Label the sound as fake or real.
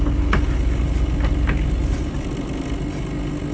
real